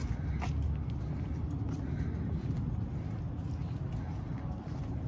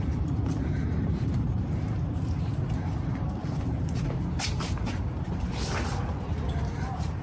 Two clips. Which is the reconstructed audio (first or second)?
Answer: second